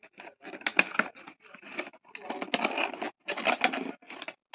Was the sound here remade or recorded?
recorded